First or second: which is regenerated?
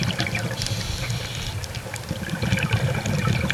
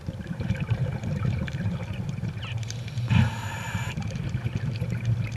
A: second